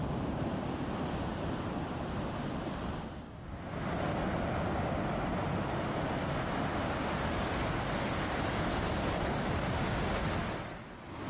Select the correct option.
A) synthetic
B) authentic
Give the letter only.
B